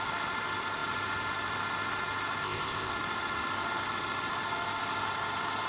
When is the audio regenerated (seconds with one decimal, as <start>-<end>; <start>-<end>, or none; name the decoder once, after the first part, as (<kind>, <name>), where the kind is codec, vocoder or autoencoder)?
2.4-2.9 (codec, ZipCodec)